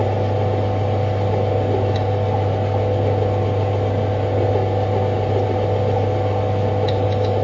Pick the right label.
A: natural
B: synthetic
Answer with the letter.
A